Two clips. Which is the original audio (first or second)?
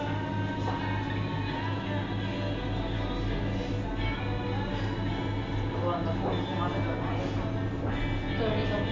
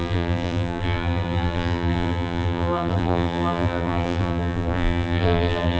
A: first